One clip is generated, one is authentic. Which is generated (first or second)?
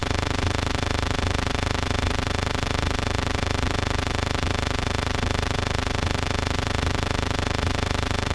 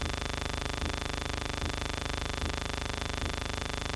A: first